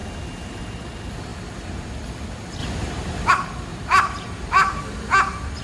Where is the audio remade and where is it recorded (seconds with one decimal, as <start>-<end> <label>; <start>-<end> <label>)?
0.0-1.3 recorded; 1.3-1.9 remade; 1.9-2.6 recorded; 2.6-3.3 remade; 3.3-3.7 recorded; 3.7-4.8 remade; 4.8-5.6 recorded